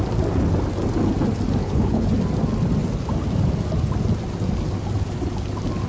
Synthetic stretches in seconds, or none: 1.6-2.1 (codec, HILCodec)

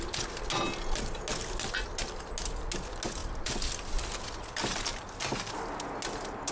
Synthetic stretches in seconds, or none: none